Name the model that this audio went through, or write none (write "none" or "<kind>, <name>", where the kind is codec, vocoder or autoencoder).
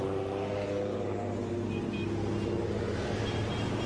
none